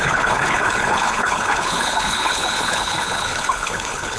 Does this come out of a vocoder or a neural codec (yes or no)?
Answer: yes